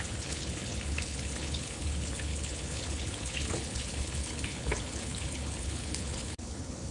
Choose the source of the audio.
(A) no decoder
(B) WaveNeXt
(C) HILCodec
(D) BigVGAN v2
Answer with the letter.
C